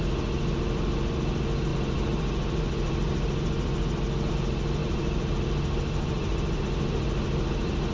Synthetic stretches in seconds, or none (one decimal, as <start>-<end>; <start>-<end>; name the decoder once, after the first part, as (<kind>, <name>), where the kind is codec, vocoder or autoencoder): 4.8-6.6 (vocoder, BigVGAN v2)